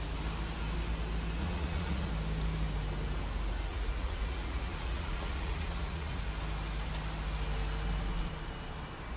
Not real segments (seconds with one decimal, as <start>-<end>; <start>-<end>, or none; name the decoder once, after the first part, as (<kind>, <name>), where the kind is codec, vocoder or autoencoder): 1.4-2.1 (vocoder, Vocos); 3.7-6.2